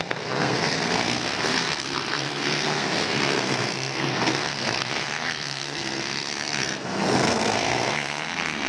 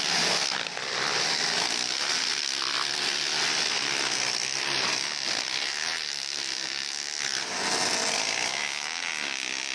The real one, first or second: second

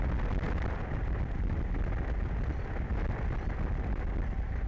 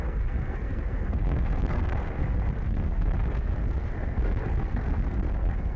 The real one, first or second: first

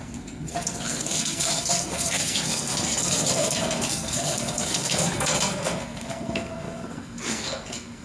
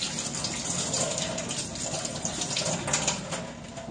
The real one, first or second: second